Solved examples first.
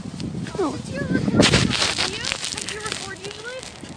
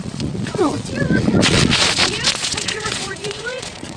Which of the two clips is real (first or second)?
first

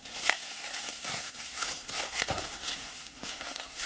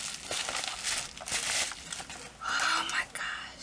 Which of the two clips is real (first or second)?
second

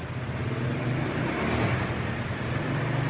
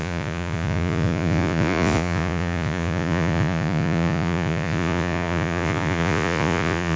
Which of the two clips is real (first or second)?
first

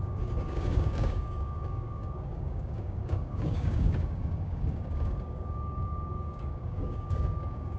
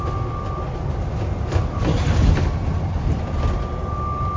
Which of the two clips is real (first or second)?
second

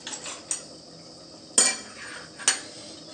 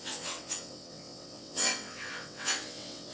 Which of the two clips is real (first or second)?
first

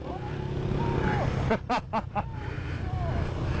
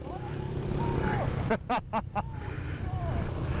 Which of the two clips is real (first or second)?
first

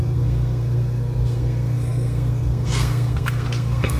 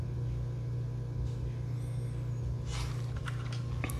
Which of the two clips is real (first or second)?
second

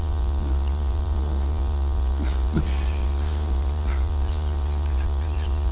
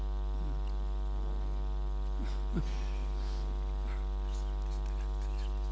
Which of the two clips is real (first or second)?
second